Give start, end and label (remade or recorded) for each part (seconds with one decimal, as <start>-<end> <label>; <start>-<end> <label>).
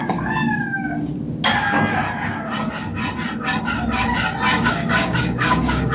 0.0-1.1 remade; 1.1-4.6 recorded; 4.6-5.9 remade